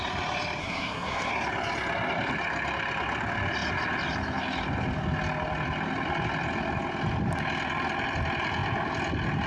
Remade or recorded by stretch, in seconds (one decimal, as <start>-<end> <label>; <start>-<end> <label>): 0.0-0.6 recorded; 0.6-1.3 remade; 1.3-9.5 recorded